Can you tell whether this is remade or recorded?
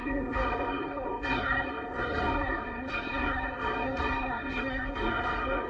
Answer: remade